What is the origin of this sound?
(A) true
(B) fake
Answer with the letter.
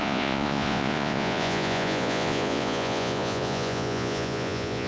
B